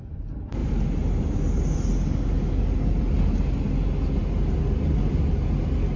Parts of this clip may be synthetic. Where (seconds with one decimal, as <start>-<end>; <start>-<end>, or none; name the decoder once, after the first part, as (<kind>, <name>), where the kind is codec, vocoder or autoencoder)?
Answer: none